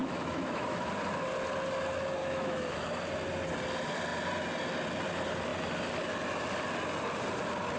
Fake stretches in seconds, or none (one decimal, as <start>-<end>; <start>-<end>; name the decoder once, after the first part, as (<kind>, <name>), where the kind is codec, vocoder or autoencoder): 0.0-0.9 (autoencoder, DAC-VAE); 2.2-2.9